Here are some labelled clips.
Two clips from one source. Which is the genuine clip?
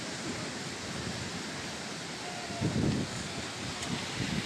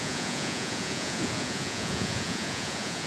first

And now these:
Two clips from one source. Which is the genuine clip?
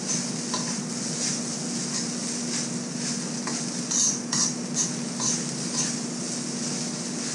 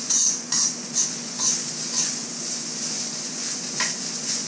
first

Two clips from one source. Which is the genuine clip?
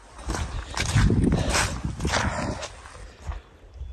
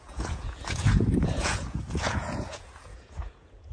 first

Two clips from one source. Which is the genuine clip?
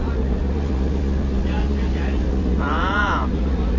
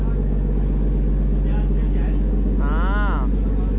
second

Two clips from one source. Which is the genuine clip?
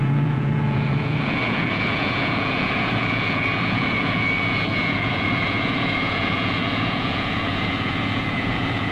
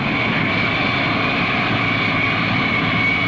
second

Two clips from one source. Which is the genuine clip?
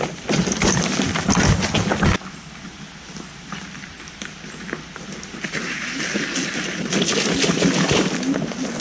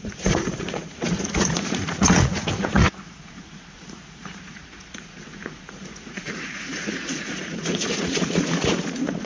first